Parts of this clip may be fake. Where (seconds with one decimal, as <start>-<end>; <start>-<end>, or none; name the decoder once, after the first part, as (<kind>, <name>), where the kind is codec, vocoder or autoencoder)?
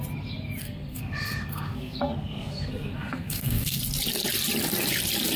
0.6-3.8 (codec, SNAC)